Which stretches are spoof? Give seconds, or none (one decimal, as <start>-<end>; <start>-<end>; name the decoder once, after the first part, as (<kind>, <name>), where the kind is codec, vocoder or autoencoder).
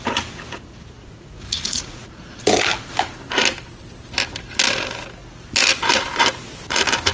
1.0-2.4 (vocoder, Vocos)